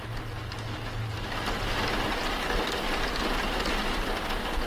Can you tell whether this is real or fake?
real